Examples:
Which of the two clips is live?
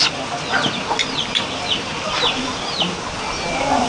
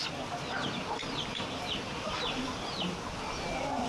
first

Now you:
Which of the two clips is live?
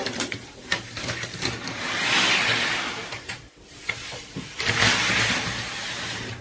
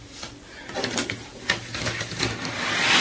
second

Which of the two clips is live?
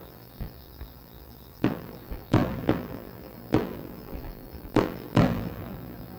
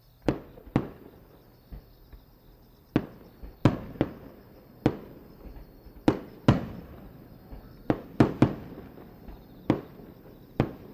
second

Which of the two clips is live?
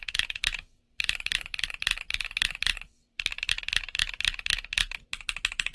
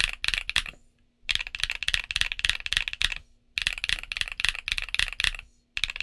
second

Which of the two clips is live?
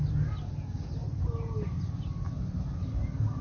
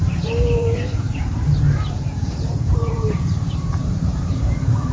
first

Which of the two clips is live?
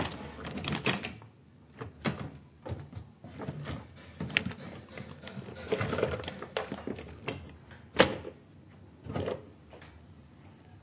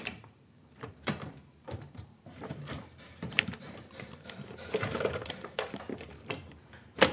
first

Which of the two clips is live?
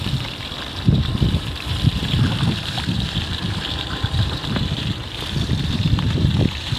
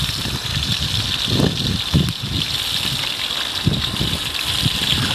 second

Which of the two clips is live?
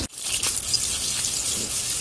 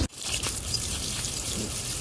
first